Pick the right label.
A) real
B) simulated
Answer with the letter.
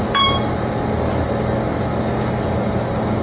A